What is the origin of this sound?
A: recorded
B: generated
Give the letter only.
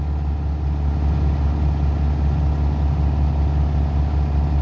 A